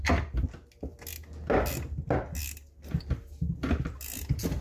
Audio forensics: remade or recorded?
recorded